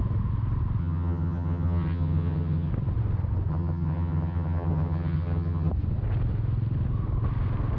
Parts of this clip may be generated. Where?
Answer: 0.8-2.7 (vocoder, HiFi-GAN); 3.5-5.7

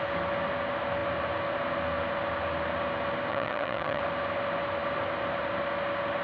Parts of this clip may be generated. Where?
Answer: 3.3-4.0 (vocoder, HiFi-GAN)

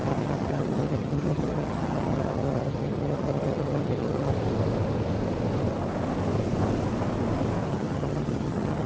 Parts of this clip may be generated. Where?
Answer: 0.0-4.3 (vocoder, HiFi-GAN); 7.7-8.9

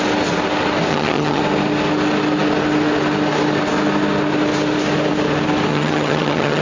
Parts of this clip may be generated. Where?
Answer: 0.9-1.4 (vocoder, HiFi-GAN); 5.7-6.6

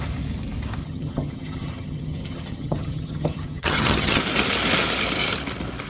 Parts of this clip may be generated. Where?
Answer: 0.8-4.2 (vocoder, HiFi-GAN)

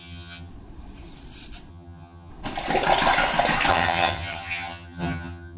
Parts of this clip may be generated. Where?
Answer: 0.0-0.5 (vocoder, HiFi-GAN); 1.7-2.3; 3.7-5.6